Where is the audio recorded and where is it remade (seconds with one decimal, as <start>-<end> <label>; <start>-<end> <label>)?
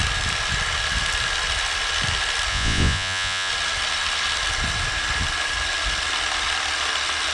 0.0-2.5 recorded; 2.5-3.5 remade; 3.5-7.3 recorded